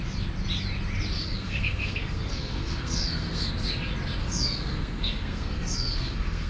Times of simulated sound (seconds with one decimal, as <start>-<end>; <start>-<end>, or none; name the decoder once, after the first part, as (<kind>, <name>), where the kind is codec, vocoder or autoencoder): 1.2-3.5 (codec, SNAC); 4.2-6.5